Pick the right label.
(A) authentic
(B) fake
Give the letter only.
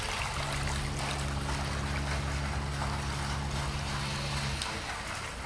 A